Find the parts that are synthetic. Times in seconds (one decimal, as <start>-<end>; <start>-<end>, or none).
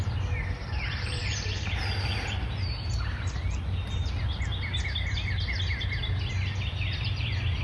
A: 0.6-3.6